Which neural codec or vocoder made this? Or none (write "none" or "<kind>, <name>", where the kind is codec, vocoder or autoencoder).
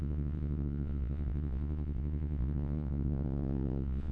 vocoder, Vocos